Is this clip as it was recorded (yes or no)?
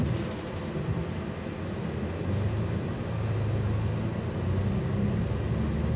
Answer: yes